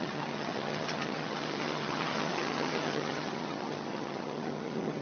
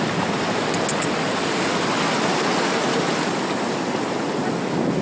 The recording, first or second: second